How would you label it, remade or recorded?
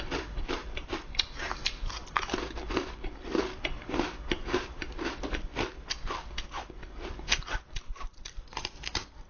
remade